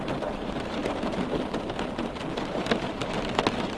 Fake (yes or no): no